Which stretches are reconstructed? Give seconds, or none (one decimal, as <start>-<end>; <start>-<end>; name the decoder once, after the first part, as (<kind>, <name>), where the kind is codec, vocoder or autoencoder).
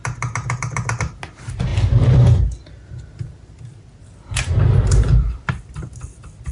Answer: 1.7-5.5 (vocoder, BigVGAN v2)